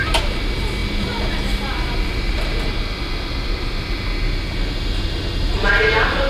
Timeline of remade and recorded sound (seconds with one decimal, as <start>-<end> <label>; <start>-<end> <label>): 0.0-6.3 recorded